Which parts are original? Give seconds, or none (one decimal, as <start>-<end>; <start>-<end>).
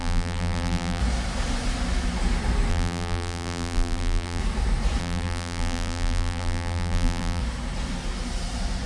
1.0-2.7; 4.4-5.0; 7.4-8.9